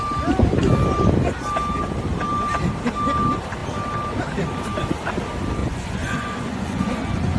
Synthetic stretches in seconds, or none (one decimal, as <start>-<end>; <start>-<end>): 5.6-7.4